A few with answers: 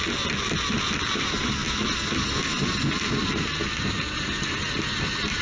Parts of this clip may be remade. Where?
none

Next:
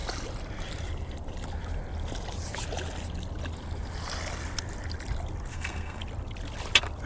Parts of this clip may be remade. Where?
5.5-6.0 (codec, SNAC)

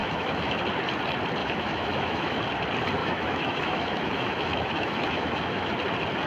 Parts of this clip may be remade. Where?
0.0-0.6 (autoencoder, DAC-VAE); 1.4-2.4; 3.0-5.7

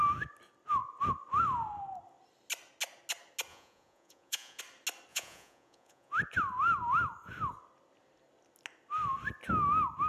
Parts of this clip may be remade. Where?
3.5-4.6 (vocoder, Vocos); 5.1-6.1